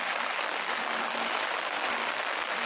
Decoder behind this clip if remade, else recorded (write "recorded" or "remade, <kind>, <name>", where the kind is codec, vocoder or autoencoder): recorded